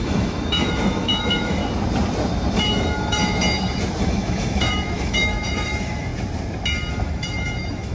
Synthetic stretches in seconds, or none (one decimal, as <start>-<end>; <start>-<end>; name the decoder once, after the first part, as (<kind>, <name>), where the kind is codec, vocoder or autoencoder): 0.0-1.6 (autoencoder, DAC-VAE); 2.5-3.2; 4.0-6.1; 6.9-7.9